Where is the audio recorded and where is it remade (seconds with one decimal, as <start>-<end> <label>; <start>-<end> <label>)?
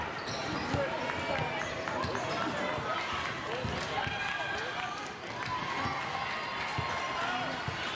0.0-7.9 recorded